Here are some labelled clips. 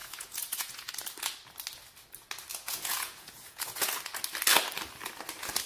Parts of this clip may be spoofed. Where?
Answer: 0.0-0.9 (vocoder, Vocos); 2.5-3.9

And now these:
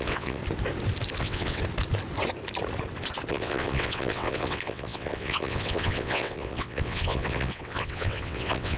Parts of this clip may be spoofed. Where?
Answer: 0.0-0.4 (vocoder, WaveNeXt); 1.2-1.6; 3.3-8.8

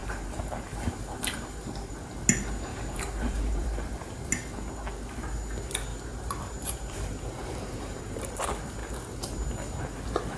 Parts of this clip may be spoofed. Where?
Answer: 0.0-1.9 (vocoder, BigVGAN v2); 2.7-4.3; 5.9-8.3

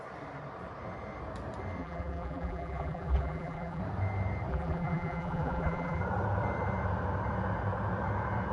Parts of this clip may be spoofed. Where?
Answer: 1.8-3.8 (vocoder, BigVGAN v2); 4.5-6.0